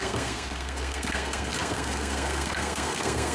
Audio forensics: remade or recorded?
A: remade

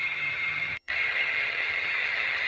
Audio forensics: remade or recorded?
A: remade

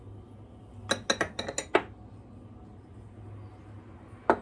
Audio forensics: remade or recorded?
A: recorded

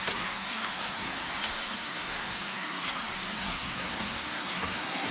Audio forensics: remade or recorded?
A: remade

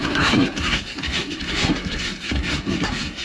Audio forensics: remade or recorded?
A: remade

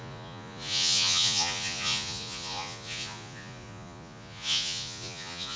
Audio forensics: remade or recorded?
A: remade